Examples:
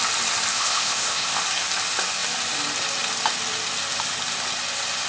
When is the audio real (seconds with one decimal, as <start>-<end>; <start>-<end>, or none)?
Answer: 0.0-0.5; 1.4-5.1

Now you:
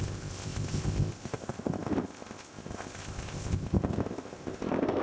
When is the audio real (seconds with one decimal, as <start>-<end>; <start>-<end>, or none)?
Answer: none

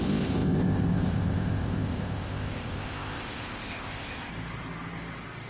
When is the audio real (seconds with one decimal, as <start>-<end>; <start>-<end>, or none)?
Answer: 4.3-5.5

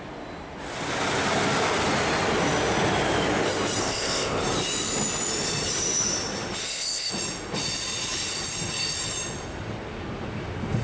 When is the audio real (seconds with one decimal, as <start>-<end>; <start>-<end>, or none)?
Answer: 0.0-3.8; 4.4-6.6; 7.1-10.8